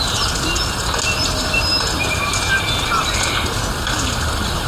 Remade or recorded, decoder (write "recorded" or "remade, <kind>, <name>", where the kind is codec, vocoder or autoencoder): recorded